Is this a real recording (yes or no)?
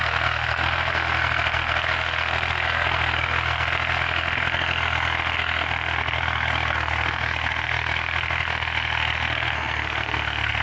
no